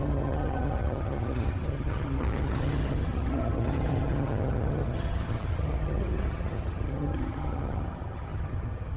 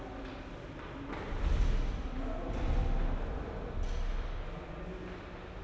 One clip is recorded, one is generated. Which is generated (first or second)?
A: first